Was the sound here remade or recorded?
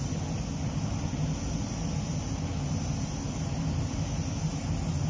recorded